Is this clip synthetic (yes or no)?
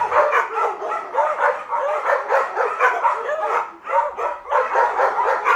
no